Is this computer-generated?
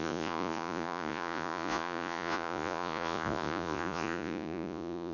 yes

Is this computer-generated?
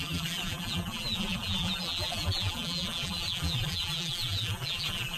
yes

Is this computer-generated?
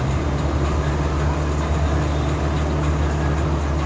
no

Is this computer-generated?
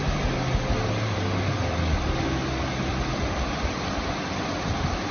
no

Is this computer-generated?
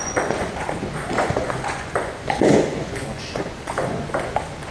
yes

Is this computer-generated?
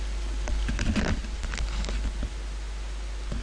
no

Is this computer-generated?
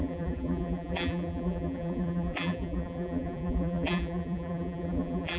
yes